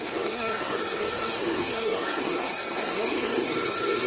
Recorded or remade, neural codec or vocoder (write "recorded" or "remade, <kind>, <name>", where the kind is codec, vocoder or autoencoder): remade, codec, SNAC